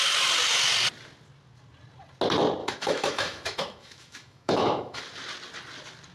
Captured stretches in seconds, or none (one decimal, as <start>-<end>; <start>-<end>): 0.0-2.6; 5.0-6.1